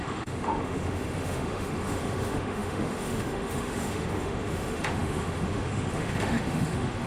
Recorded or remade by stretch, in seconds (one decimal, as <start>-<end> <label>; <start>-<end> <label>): 0.0-7.1 remade

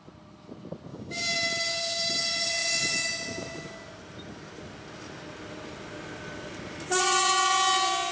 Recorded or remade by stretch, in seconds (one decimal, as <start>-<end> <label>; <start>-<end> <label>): 0.0-0.9 recorded; 0.9-2.2 remade; 2.2-8.1 recorded

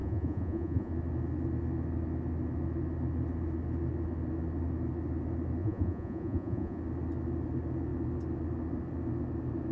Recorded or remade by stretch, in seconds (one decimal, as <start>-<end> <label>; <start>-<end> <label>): 0.0-0.9 remade; 0.9-5.6 recorded; 5.6-6.8 remade; 6.8-9.7 recorded

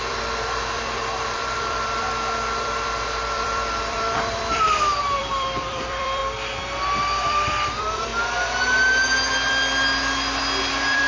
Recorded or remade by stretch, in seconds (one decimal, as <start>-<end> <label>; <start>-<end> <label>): 0.0-6.2 remade; 6.2-7.0 recorded; 7.0-8.1 remade; 8.1-10.7 recorded; 10.7-11.1 remade

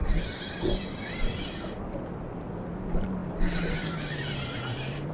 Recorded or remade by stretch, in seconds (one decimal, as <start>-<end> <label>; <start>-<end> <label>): 0.0-1.8 remade; 1.8-3.2 recorded; 3.2-3.9 remade; 3.9-5.1 recorded

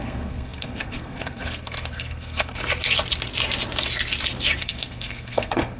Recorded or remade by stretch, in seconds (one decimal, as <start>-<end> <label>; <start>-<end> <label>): 0.0-2.6 remade; 2.6-4.6 recorded; 4.6-5.8 remade